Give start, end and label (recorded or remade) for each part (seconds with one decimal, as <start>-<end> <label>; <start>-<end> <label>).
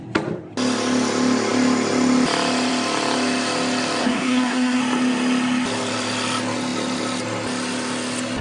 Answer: 0.0-4.0 recorded; 4.0-4.8 remade; 4.8-8.4 recorded